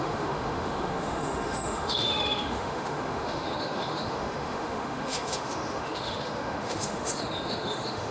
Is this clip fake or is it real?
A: fake